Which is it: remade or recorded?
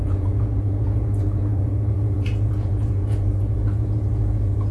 remade